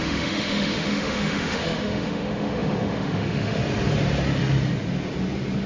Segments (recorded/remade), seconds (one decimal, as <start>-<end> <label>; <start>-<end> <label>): 0.0-3.6 remade; 3.6-5.7 recorded